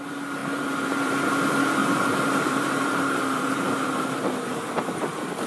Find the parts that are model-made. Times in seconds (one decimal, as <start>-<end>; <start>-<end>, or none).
0.4-1.1; 1.8-5.1